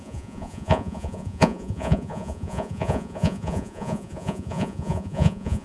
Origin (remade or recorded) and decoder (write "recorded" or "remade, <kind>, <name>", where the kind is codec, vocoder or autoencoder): remade, vocoder, Vocos